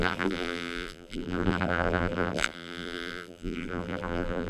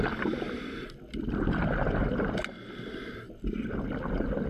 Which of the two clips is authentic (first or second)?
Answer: second